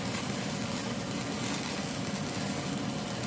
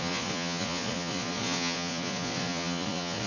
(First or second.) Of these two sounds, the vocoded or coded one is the second